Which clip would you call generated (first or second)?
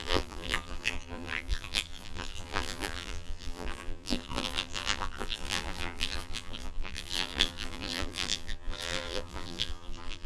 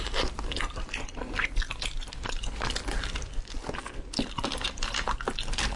first